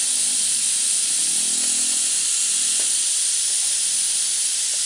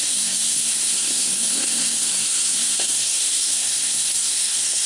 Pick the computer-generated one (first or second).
second